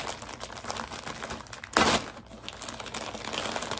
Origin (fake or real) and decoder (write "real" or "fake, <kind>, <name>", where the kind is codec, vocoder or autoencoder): real